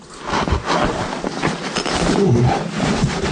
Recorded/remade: recorded